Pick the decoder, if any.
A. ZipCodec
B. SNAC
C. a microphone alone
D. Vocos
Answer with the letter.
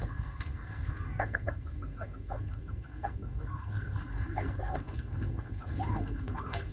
B